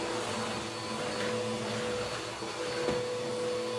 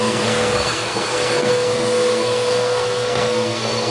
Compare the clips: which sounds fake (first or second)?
second